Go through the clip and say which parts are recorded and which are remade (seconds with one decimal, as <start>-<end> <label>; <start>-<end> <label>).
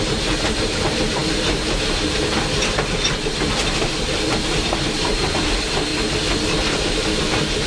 0.0-5.9 remade; 5.9-7.2 recorded; 7.2-7.7 remade